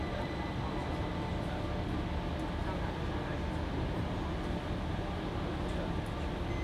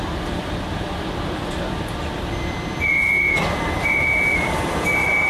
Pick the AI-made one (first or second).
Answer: second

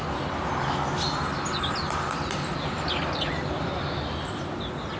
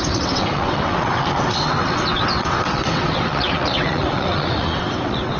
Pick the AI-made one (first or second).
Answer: second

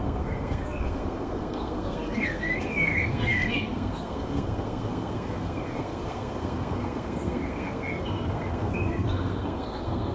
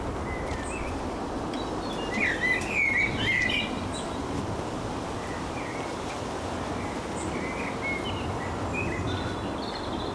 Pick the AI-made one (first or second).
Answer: first